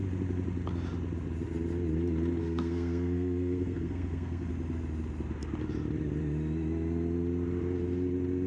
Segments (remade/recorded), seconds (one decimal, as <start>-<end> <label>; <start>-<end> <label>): 0.0-2.4 recorded; 2.4-4.5 remade; 4.5-8.5 recorded